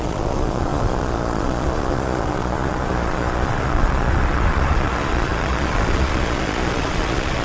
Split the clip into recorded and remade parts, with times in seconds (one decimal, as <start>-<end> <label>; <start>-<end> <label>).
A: 0.0-7.4 remade